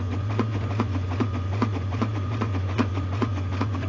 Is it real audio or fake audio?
fake